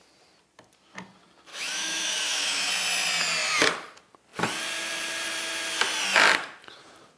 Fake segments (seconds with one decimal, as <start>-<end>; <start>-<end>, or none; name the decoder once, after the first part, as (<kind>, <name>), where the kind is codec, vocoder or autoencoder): 1.5-2.7 (autoencoder, DAC-VAE)